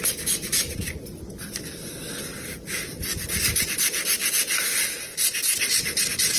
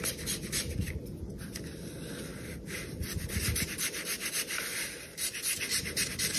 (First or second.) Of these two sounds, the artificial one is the second